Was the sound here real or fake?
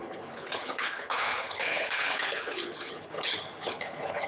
fake